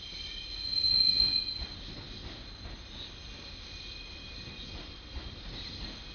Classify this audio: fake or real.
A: real